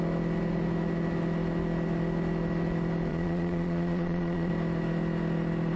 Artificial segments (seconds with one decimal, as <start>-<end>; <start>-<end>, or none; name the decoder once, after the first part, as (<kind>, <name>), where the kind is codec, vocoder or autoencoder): 3.1-4.5 (vocoder, Vocos)